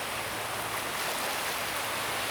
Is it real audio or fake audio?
real